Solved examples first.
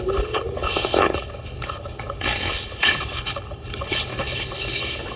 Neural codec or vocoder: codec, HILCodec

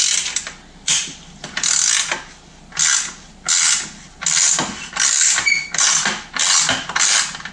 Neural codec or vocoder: none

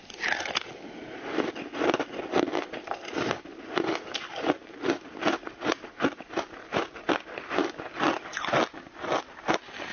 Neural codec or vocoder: none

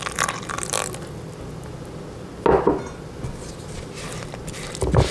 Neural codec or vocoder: none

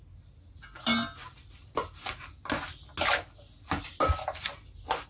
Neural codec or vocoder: none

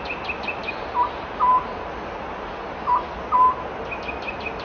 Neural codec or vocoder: none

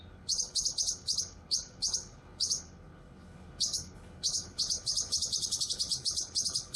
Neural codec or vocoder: codec, HILCodec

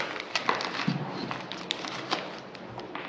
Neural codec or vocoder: none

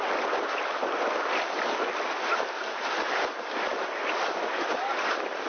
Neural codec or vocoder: none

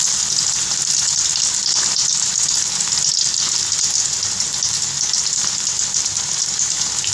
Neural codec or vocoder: none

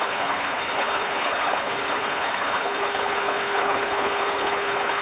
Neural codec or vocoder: codec, HILCodec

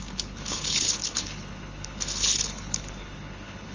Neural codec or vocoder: codec, HILCodec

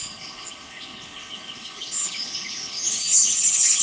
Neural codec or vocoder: codec, HILCodec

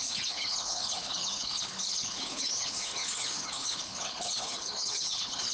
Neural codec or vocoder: codec, HILCodec